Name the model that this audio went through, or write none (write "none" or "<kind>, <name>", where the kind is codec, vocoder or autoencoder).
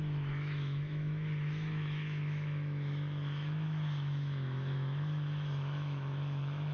autoencoder, DAC-VAE